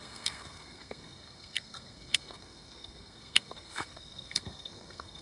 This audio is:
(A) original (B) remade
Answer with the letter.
B